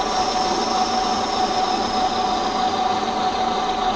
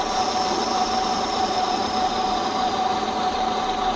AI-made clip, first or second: second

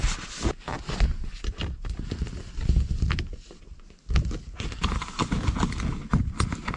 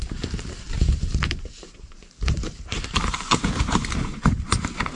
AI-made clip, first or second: second